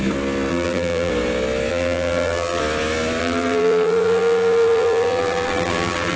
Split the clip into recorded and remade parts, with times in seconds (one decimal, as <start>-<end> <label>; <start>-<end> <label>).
0.0-0.5 recorded; 0.5-1.1 remade; 1.1-1.7 recorded; 1.7-2.6 remade; 2.6-3.2 recorded; 3.2-6.2 remade